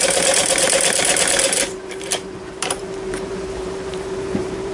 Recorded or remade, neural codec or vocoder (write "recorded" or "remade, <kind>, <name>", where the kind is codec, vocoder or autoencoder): remade, vocoder, BigVGAN v2